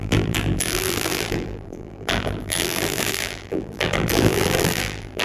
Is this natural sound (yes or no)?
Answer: no